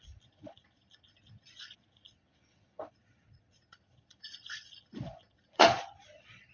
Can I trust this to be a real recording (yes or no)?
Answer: no